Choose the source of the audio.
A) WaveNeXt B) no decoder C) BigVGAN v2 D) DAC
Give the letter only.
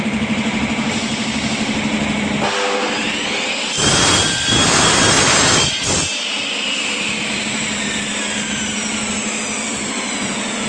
B